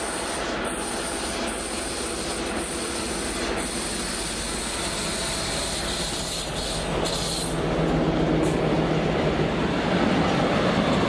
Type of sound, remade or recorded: recorded